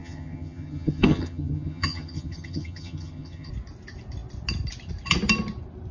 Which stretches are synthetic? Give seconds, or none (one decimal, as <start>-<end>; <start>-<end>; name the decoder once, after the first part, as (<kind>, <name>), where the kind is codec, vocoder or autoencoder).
0.0-3.5 (vocoder, HiFi-GAN)